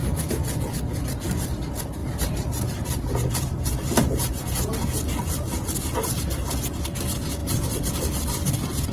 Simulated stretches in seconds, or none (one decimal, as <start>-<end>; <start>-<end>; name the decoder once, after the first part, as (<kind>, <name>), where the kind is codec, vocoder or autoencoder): 2.0-4.5 (vocoder, BigVGAN v2); 7.4-7.9